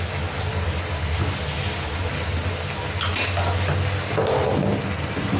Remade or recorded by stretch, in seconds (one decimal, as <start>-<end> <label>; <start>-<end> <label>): 0.0-5.4 recorded